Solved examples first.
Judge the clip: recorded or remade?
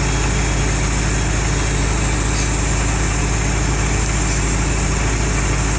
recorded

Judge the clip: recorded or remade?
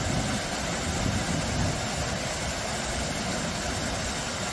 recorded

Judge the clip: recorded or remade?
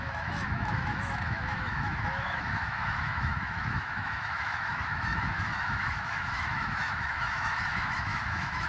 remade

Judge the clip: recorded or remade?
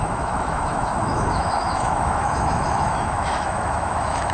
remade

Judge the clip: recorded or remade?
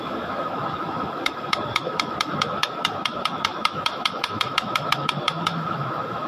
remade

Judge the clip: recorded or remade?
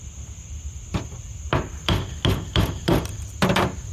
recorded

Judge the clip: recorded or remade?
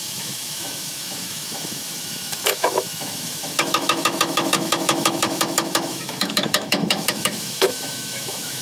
remade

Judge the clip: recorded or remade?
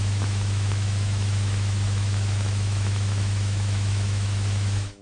remade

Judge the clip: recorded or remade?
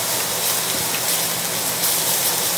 recorded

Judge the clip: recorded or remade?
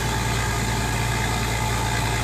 recorded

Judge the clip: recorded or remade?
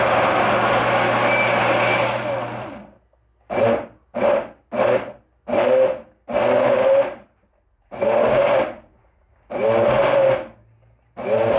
recorded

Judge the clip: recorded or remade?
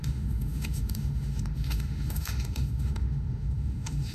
remade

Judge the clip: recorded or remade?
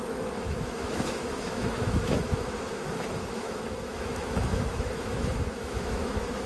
remade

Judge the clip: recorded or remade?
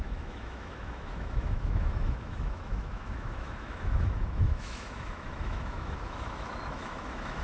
remade